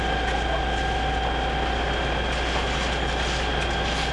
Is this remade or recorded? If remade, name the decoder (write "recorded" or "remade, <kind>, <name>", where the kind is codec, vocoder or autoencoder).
recorded